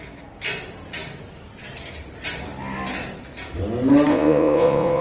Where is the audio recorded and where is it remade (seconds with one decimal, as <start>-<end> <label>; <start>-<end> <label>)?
0.0-4.1 recorded; 4.1-5.0 remade